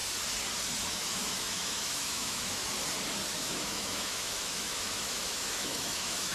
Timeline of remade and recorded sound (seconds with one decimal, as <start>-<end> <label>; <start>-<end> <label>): 0.0-0.9 recorded; 0.9-2.6 remade; 2.6-3.3 recorded; 3.3-6.3 remade